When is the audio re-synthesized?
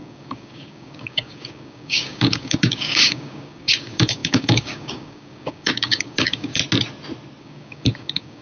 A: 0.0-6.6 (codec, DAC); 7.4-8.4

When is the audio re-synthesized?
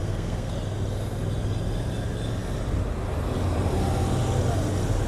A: 0.0-0.5 (codec, SNAC)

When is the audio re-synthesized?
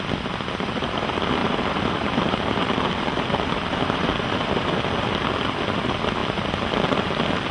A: 1.4-4.7 (vocoder, BigVGAN v2)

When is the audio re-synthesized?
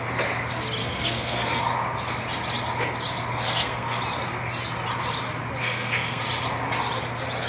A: 0.8-1.6 (codec, SNAC); 3.3-4.0; 5.6-6.2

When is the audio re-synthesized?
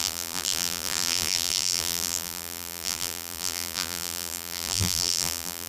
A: 0.0-5.7 (vocoder, BigVGAN v2)